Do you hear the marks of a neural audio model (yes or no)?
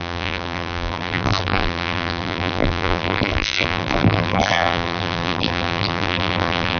yes